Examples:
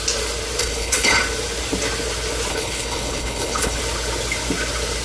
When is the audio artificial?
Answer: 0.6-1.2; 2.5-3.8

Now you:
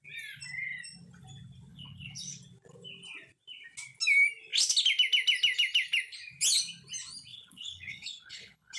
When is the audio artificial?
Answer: 1.7-2.4; 7.3-8.8

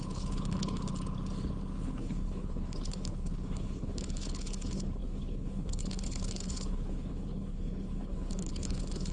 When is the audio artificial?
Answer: 0.0-0.9; 1.8-9.1

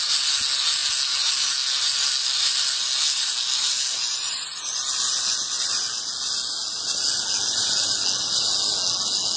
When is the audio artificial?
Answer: none